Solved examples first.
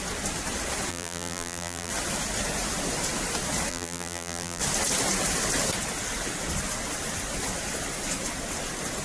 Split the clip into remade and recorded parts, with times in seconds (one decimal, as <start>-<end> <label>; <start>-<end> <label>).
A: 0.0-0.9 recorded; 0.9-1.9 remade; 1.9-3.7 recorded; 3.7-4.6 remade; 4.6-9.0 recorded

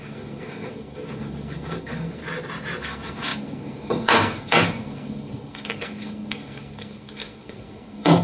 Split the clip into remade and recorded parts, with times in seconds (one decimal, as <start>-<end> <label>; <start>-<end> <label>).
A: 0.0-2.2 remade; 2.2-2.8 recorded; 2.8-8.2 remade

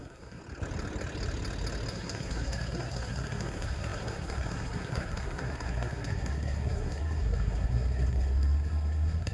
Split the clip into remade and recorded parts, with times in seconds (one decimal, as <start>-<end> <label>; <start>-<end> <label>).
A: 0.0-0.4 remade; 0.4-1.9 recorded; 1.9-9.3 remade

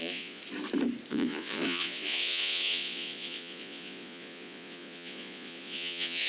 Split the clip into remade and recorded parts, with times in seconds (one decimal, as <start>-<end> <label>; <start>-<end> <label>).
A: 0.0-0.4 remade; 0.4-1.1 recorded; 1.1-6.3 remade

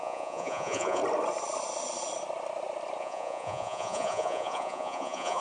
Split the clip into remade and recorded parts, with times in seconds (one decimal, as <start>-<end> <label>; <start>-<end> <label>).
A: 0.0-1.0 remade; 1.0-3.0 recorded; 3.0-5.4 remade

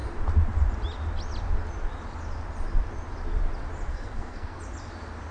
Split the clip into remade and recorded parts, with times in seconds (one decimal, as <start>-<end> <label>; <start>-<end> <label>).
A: 0.0-3.9 recorded; 3.9-4.6 remade; 4.6-5.3 recorded